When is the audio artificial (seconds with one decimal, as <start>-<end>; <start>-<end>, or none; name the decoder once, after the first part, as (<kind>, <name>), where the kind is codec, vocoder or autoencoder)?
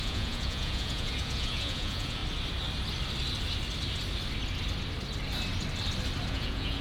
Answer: 0.0-2.2 (vocoder, Vocos); 6.3-6.8